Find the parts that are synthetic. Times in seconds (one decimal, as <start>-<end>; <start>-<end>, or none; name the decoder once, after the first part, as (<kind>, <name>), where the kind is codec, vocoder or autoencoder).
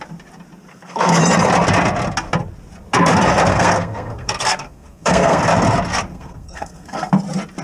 0.7-1.2 (codec, SNAC); 3.5-5.4; 6.1-7.1